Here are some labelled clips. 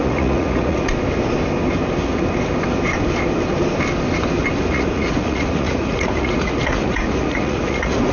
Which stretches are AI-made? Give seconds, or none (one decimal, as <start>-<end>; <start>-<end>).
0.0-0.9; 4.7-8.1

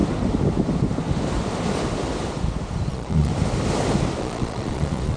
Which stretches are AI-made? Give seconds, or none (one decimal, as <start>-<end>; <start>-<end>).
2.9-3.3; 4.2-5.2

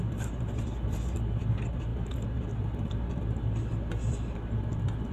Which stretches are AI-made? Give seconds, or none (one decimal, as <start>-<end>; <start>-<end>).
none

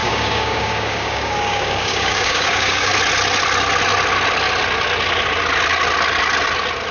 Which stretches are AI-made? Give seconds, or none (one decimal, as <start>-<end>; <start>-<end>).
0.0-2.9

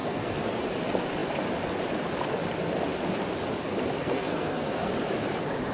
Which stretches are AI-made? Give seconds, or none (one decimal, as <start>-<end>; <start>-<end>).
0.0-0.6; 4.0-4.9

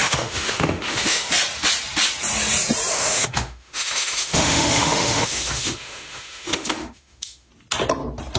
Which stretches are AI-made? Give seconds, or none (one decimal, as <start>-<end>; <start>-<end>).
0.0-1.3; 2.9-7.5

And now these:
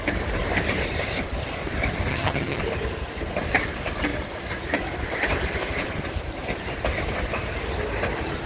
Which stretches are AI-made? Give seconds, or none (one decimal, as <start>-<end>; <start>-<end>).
2.1-2.6